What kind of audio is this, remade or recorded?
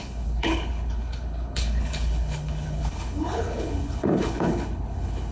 remade